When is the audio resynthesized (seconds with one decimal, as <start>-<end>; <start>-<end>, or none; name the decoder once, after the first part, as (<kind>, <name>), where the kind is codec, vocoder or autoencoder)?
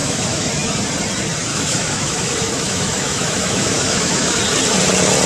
0.0-0.5 (autoencoder, DAC-VAE); 1.5-4.4